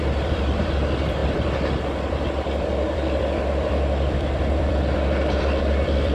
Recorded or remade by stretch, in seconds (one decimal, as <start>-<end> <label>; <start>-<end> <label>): 0.0-6.1 remade